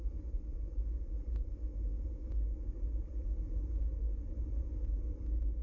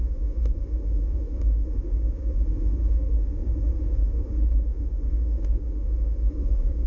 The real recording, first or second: first